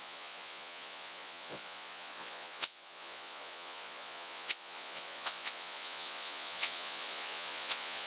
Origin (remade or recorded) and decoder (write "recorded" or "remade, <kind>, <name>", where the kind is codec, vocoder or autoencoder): remade, vocoder, Vocos